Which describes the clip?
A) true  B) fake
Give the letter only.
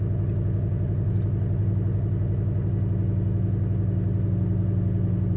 A